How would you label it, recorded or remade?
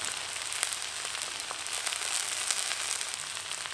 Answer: recorded